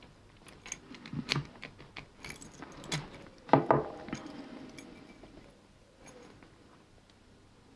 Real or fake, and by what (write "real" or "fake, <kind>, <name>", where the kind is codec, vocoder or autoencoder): real